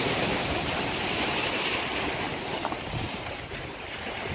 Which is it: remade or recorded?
remade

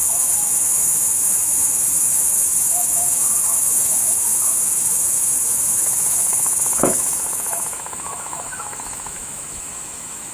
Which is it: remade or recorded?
remade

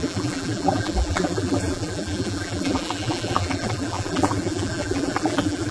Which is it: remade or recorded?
remade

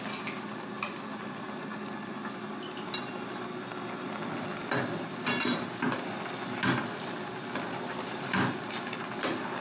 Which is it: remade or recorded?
recorded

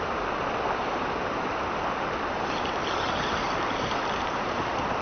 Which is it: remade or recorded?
recorded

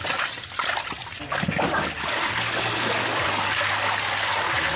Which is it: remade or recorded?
recorded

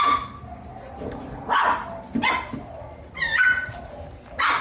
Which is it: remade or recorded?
recorded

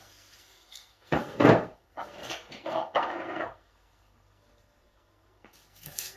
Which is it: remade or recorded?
remade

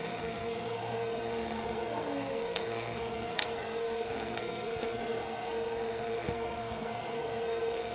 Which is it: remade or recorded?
remade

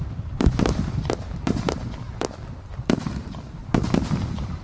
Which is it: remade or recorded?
remade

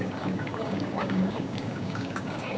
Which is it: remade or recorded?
remade